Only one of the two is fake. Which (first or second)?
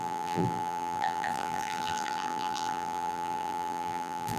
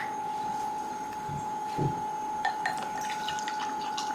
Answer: first